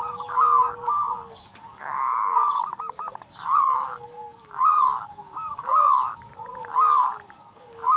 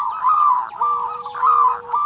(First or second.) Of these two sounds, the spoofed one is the first